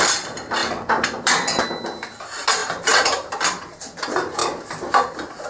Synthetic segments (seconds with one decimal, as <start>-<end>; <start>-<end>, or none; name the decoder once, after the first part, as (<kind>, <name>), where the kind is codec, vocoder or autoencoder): 0.6-1.6 (vocoder, BigVGAN v2); 2.6-4.0